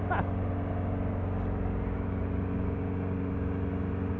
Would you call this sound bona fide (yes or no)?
yes